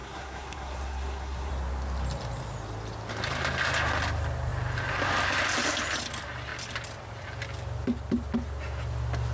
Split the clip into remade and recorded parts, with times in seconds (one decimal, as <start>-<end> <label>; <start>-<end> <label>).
0.0-1.5 remade; 1.5-9.3 recorded